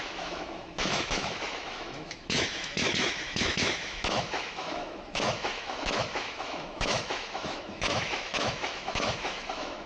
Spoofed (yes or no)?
yes